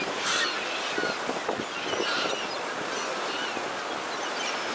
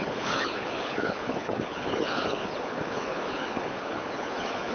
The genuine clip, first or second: first